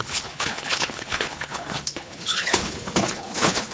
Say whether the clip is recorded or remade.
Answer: remade